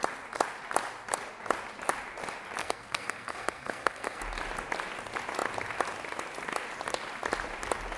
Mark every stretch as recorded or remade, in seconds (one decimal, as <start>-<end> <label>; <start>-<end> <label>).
0.0-2.6 recorded; 2.6-4.2 remade; 4.2-8.0 recorded